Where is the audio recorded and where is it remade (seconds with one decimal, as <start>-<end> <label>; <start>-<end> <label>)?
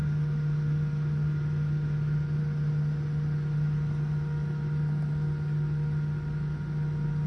0.0-7.3 recorded